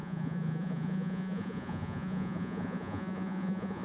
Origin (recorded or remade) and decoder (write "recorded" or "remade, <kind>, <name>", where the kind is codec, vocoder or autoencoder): remade, vocoder, Vocos